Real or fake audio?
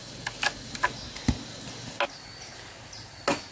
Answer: real